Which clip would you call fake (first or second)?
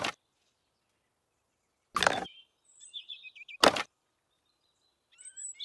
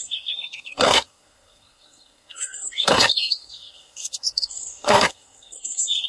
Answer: second